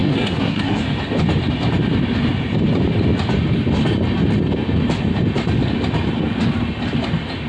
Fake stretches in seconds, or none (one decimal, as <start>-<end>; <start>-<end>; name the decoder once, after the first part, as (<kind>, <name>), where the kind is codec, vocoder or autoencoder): 0.0-0.8 (codec, SNAC)